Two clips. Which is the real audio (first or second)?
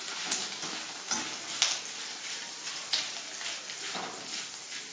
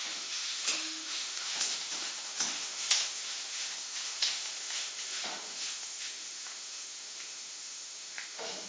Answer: first